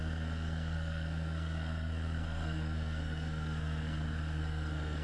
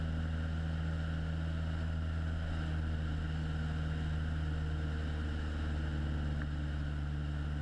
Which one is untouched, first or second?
second